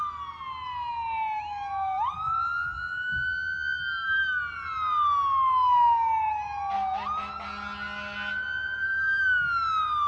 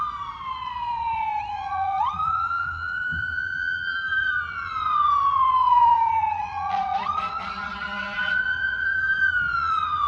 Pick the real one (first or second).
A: first